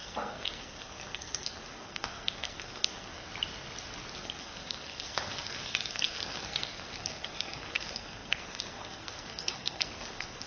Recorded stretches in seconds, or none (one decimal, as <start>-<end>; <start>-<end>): 3.3-4.2